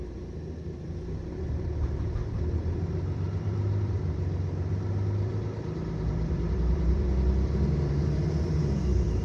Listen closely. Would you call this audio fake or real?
fake